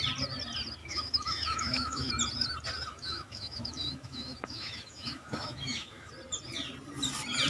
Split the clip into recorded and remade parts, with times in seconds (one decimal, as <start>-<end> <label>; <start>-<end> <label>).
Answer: 0.0-0.8 recorded; 0.8-2.1 remade; 2.1-2.9 recorded; 2.9-6.1 remade; 6.1-7.5 recorded